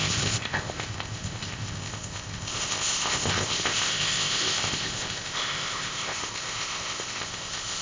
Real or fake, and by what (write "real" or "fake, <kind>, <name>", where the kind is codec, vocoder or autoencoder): fake, codec, ZipCodec